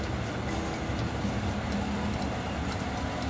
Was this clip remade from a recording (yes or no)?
no